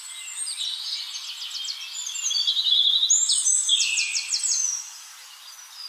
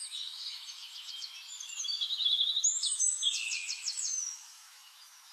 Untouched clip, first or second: first